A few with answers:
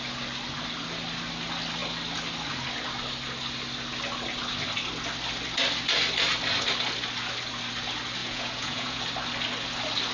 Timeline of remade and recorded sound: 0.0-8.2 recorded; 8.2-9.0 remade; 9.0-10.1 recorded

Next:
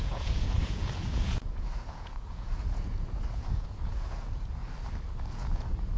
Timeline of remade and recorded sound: 0.0-4.6 remade; 4.6-5.3 recorded; 5.3-6.0 remade

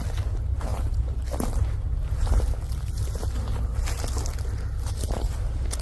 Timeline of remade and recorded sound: 0.0-5.8 recorded

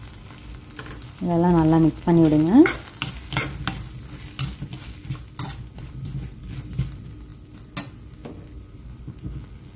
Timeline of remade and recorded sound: 0.0-9.8 recorded